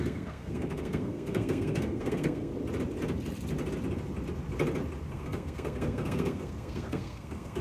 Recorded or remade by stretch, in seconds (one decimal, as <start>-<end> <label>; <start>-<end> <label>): 0.0-2.5 remade; 2.5-5.1 recorded; 5.1-7.6 remade